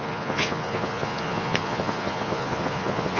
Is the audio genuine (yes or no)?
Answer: no